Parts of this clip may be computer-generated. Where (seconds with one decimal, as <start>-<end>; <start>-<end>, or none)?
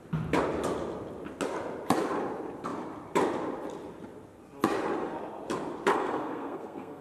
5.9-7.0